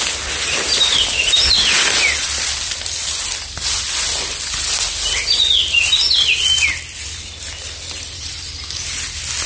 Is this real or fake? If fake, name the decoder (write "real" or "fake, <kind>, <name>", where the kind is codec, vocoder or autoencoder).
real